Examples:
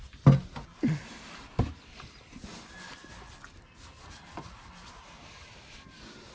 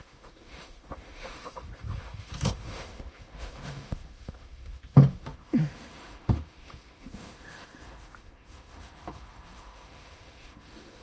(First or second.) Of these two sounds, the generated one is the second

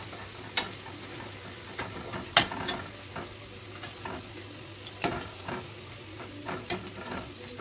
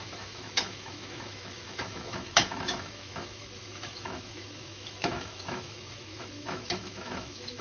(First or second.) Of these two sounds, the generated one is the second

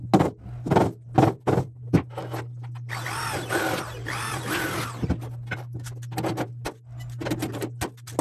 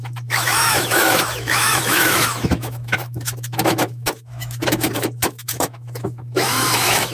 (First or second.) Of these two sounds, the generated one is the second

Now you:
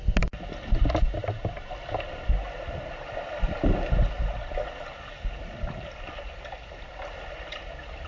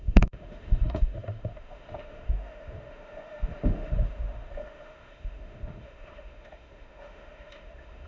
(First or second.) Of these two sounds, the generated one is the second